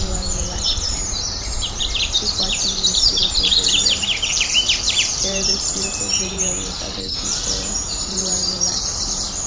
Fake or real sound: fake